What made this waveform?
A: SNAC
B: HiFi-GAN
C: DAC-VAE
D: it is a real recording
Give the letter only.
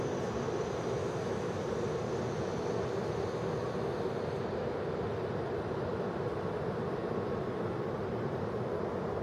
D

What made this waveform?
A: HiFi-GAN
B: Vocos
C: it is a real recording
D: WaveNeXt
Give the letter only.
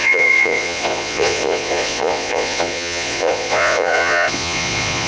B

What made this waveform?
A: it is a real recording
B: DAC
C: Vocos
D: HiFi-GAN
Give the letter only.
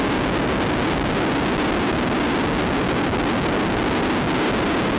A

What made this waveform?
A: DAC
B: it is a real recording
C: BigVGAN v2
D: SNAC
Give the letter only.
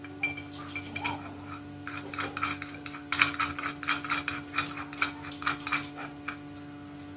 B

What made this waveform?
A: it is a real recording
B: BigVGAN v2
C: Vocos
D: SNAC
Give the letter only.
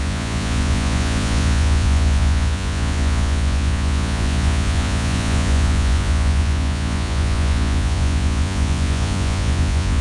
C